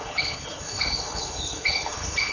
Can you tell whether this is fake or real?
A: fake